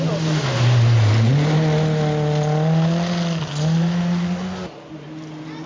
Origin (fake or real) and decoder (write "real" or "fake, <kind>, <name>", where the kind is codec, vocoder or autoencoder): real